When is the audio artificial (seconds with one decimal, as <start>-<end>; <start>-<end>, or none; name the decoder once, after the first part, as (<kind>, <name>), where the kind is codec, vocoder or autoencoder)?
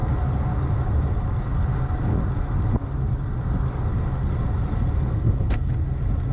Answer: 5.1-5.7 (codec, SNAC)